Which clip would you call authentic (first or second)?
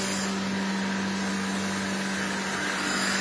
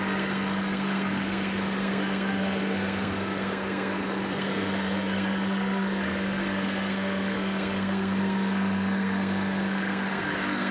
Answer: first